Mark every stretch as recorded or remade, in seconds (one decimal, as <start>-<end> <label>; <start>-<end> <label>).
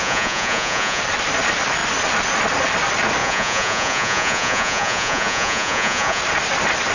0.0-1.0 remade; 1.0-3.2 recorded; 3.2-6.2 remade; 6.2-6.9 recorded